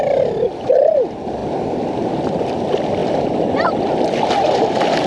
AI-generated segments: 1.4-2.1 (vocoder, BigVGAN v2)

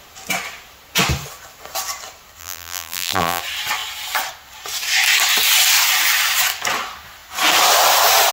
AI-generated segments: 2.4-3.4 (vocoder, BigVGAN v2)

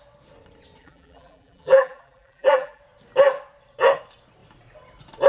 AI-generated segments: 0.8-2.8 (vocoder, BigVGAN v2)

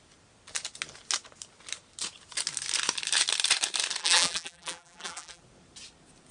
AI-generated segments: 4.0-5.4 (vocoder, BigVGAN v2)